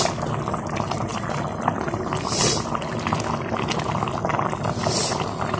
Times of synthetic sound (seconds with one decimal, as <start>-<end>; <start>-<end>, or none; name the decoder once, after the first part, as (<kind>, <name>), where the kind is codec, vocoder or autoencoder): 1.1-2.7 (vocoder, BigVGAN v2)